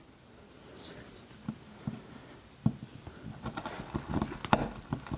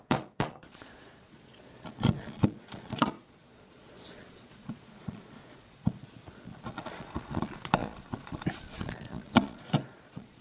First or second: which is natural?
first